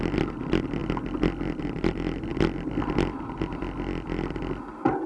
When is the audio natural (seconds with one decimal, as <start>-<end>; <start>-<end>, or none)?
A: 0.0-5.1